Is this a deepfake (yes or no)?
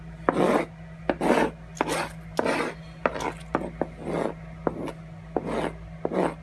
no